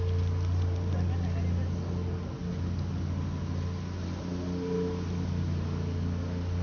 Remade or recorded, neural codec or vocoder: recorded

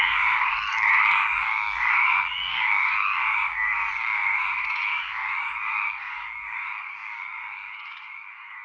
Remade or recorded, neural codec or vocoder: remade, codec, DAC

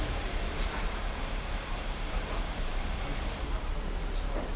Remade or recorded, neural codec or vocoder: remade, vocoder, BigVGAN v2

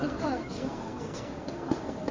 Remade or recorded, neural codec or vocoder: remade, codec, SNAC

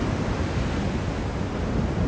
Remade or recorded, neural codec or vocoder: recorded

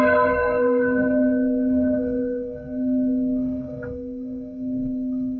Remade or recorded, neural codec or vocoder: remade, codec, SNAC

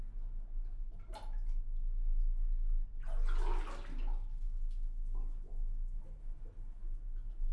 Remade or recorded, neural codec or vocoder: recorded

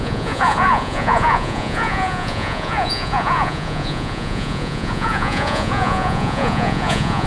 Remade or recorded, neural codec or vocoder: remade, vocoder, Vocos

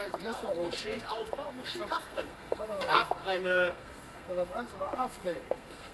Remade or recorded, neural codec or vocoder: remade, codec, SNAC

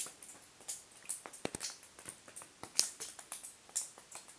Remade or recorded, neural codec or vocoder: recorded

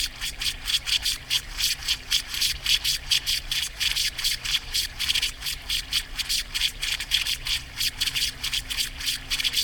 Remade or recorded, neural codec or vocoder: remade, vocoder, BigVGAN v2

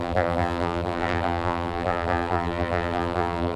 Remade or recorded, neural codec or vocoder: remade, vocoder, BigVGAN v2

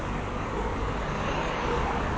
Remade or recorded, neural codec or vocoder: remade, codec, DAC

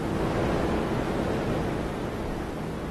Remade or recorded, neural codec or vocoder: recorded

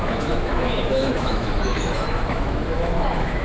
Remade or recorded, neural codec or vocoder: remade, autoencoder, DAC-VAE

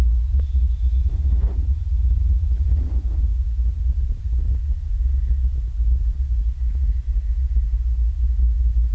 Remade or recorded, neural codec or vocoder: recorded